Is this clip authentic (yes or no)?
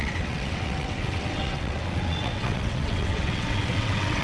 no